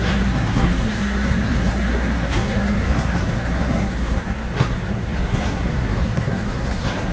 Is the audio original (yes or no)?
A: no